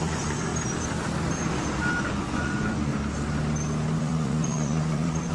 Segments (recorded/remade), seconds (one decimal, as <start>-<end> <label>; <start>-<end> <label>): 0.0-0.5 remade; 0.5-2.0 recorded; 2.0-2.9 remade; 2.9-4.0 recorded; 4.0-5.3 remade